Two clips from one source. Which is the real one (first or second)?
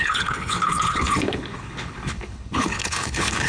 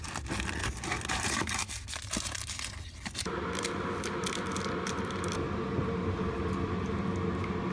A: second